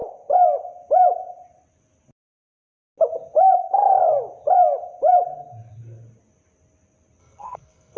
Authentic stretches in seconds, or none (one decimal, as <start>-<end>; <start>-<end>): 0.0-7.2